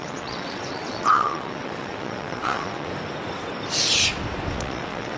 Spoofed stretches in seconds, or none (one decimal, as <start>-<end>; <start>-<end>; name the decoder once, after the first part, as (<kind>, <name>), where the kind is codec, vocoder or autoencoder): 0.0-2.9 (vocoder, WaveNeXt); 4.5-5.2